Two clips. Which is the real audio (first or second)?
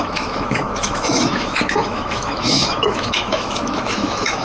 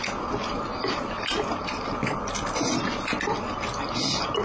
second